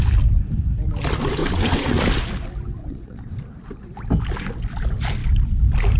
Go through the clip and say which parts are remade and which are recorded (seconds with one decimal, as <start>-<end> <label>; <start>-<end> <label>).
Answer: 0.0-1.4 recorded; 1.4-2.0 remade; 2.0-2.8 recorded; 2.8-3.3 remade; 3.3-6.0 recorded

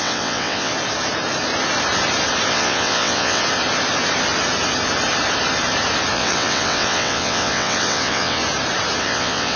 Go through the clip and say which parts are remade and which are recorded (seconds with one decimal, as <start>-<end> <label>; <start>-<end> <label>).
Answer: 0.0-0.7 remade; 0.7-2.5 recorded; 2.5-3.4 remade; 3.4-6.1 recorded; 6.1-8.4 remade; 8.4-9.0 recorded; 9.0-9.6 remade

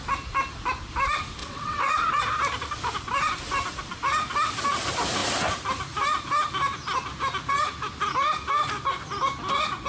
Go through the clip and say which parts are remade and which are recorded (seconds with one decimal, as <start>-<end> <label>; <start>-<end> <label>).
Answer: 0.0-1.4 recorded; 1.4-2.2 remade; 2.2-9.9 recorded

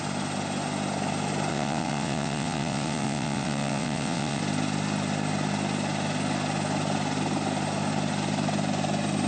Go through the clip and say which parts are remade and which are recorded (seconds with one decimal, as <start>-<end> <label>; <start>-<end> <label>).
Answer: 0.0-1.5 recorded; 1.5-4.4 remade; 4.4-9.3 recorded